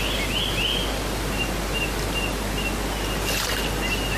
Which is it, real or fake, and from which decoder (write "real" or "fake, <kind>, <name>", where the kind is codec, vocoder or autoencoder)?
real